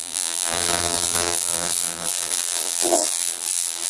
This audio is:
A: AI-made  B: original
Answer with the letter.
A